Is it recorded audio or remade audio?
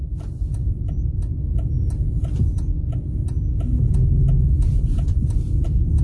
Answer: recorded